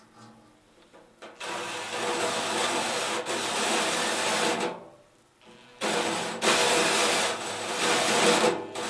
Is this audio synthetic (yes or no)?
no